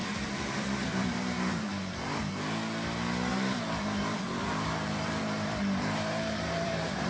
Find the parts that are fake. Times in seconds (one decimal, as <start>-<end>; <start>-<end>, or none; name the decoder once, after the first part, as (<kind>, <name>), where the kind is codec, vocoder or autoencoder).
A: 1.0-2.2 (vocoder, BigVGAN v2); 3.3-7.1